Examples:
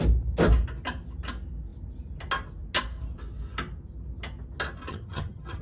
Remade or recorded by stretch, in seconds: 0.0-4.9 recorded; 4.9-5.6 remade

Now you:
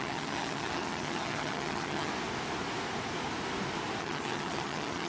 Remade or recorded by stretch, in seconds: 0.0-2.1 remade; 2.1-4.0 recorded; 4.0-5.1 remade